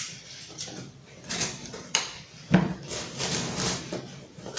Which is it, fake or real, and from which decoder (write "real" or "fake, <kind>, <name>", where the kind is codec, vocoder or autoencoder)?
fake, vocoder, BigVGAN v2